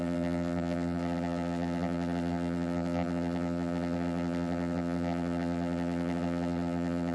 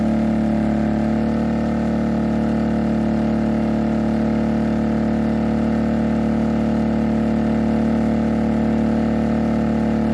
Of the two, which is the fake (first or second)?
first